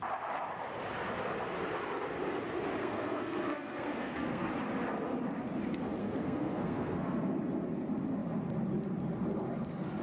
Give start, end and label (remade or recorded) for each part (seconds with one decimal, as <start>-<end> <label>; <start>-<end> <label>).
0.0-2.8 recorded; 2.8-4.5 remade; 4.5-6.0 recorded; 6.0-7.0 remade; 7.0-10.0 recorded